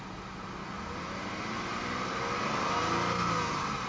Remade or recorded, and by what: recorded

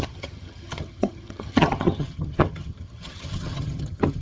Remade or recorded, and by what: remade, vocoder, HiFi-GAN